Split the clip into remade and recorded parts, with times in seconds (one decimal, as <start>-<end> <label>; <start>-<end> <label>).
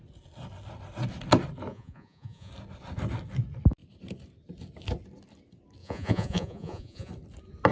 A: 0.0-1.7 recorded; 1.7-2.5 remade; 2.5-5.8 recorded; 5.8-7.1 remade; 7.1-7.7 recorded